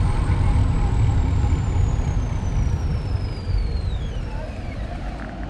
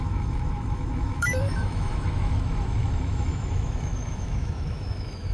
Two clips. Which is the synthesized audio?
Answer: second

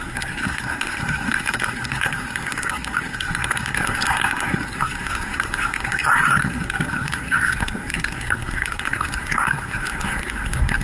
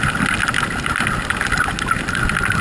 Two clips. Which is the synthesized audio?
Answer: first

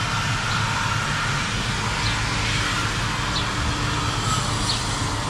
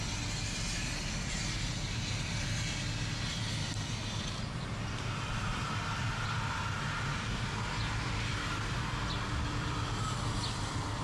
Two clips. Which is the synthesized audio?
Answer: second